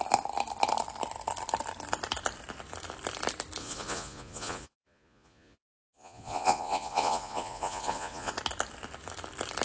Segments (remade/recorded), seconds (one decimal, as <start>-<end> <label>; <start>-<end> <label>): 0.0-3.6 recorded; 3.6-8.3 remade; 8.3-9.6 recorded